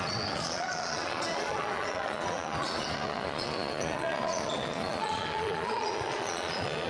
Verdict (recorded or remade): remade